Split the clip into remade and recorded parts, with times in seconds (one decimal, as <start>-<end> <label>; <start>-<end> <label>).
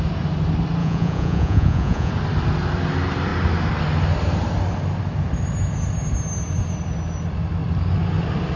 0.0-0.8 recorded; 0.8-2.1 remade; 2.1-8.6 recorded